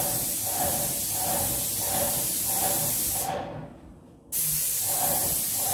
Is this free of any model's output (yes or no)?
yes